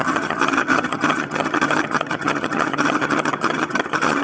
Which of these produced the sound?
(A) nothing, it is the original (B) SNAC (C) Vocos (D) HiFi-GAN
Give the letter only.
D